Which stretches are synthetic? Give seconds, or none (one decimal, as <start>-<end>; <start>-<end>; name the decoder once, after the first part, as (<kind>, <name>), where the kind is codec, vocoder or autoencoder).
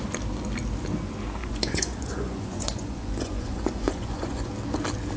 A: 1.4-4.5 (vocoder, Vocos)